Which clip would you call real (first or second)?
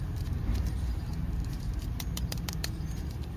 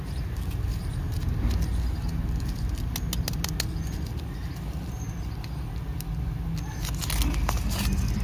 second